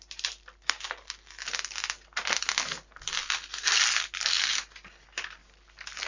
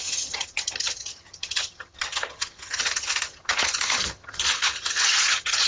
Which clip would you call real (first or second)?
first